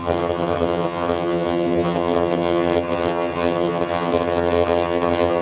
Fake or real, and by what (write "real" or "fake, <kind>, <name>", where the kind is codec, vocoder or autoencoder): fake, vocoder, HiFi-GAN